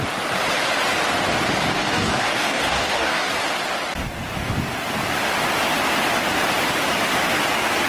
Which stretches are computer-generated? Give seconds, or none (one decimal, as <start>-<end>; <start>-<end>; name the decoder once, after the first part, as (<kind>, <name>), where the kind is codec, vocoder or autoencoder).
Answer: 1.7-3.3 (codec, DAC)